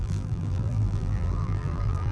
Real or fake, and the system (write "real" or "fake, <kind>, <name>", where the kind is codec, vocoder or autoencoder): fake, vocoder, BigVGAN v2